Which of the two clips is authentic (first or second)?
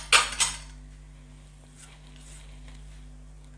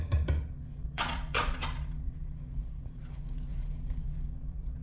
first